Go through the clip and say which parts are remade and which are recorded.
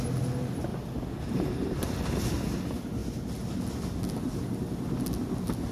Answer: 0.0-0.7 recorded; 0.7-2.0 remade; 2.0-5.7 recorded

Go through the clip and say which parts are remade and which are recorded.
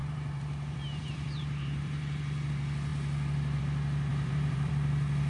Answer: 0.0-2.5 remade; 2.5-4.1 recorded; 4.1-4.7 remade; 4.7-5.3 recorded